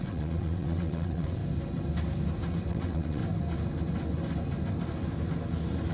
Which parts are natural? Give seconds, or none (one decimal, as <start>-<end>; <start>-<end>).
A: 1.4-2.7; 3.2-5.9